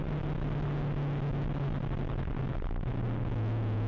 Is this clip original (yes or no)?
yes